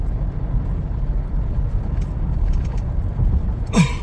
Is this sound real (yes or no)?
no